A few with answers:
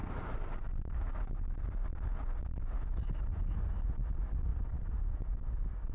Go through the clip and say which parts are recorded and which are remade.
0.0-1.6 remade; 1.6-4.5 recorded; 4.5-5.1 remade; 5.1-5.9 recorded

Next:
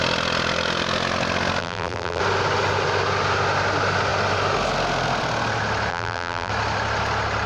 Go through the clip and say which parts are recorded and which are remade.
0.0-1.6 recorded; 1.6-2.2 remade; 2.2-5.9 recorded; 5.9-6.5 remade; 6.5-7.5 recorded

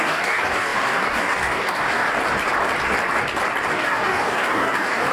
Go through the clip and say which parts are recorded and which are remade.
0.0-2.1 remade; 2.1-3.7 recorded; 3.7-5.1 remade

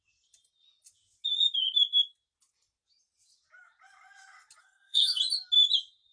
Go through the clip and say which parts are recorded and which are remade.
0.0-4.6 recorded; 4.6-5.2 remade; 5.2-6.1 recorded

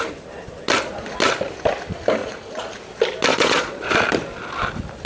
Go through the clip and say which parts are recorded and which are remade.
0.0-2.2 recorded; 2.2-2.7 remade; 2.7-3.3 recorded; 3.3-3.9 remade; 3.9-5.1 recorded